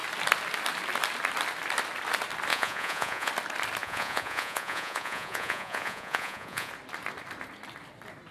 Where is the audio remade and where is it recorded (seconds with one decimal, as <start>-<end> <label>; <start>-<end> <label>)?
0.0-2.5 recorded; 2.5-3.3 remade; 3.3-3.8 recorded; 3.8-6.7 remade; 6.7-8.3 recorded